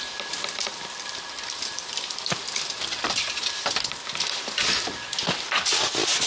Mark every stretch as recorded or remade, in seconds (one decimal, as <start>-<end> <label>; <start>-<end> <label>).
0.0-6.3 recorded